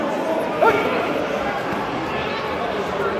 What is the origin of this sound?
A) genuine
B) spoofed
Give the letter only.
A